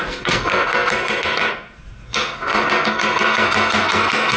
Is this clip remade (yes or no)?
yes